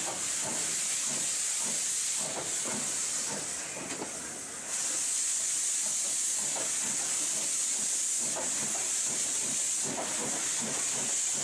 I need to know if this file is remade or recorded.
recorded